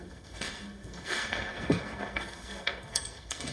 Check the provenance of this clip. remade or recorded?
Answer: remade